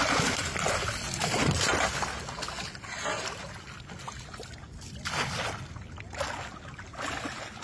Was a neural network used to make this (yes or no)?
no